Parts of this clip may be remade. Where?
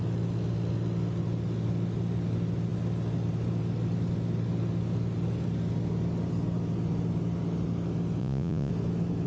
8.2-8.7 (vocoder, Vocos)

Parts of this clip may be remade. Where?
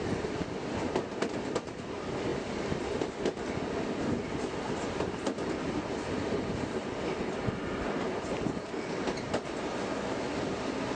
none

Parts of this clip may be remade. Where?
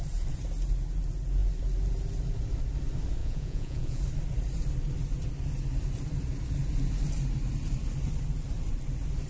3.2-4.0 (vocoder, Vocos)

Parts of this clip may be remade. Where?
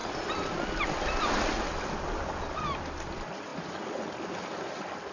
none